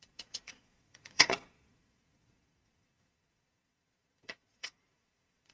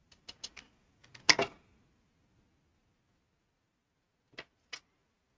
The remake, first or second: first